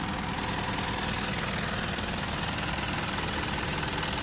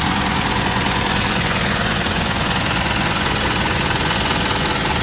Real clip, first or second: first